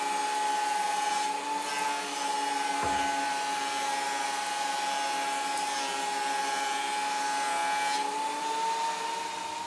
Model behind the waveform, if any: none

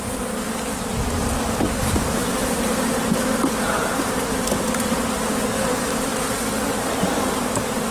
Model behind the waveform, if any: none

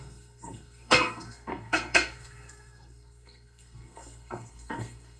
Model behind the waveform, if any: codec, SNAC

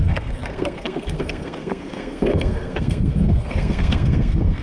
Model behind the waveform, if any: codec, SNAC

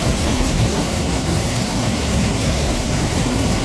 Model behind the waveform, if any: codec, SNAC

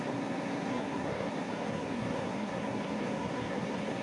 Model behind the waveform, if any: codec, SNAC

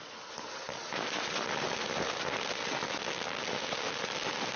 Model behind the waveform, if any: none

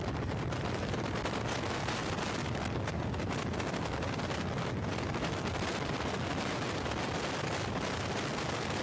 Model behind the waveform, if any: none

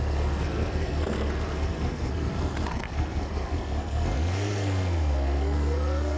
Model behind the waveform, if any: codec, SNAC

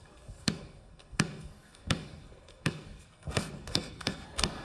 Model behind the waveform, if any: codec, SNAC